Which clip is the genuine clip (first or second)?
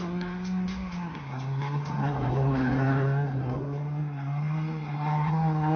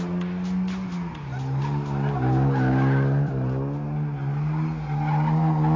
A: second